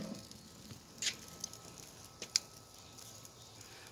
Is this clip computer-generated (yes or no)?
no